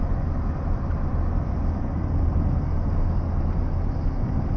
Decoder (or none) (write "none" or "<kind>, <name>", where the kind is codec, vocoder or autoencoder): none